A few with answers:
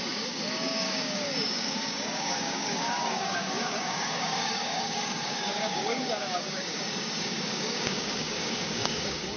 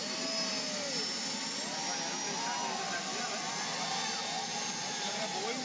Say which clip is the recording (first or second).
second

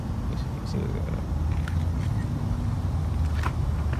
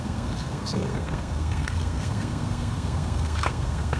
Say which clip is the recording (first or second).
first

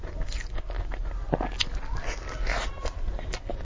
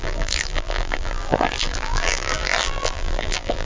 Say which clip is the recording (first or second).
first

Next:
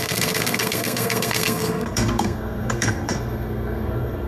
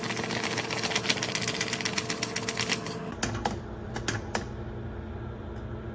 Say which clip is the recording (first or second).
second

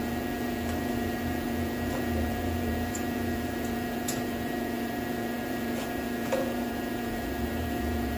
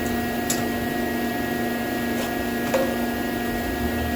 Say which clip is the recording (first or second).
second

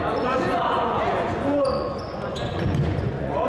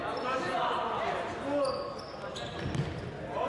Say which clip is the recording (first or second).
second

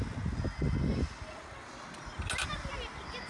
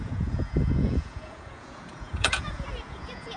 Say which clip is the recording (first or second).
first